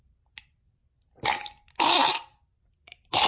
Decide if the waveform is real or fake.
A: real